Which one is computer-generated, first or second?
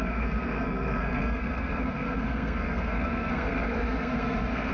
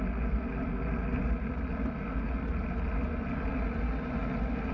first